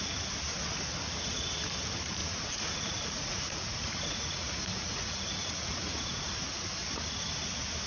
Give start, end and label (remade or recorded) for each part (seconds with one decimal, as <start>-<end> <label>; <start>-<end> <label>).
0.0-2.2 recorded; 2.2-6.2 remade; 6.2-7.9 recorded